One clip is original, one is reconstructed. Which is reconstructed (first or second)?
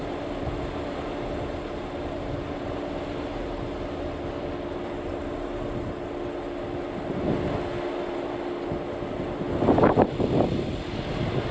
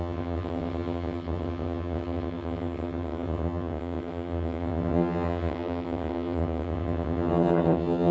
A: second